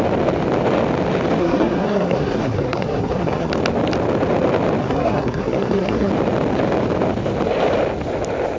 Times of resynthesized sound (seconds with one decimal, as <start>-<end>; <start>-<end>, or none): 1.4-3.5; 4.8-6.1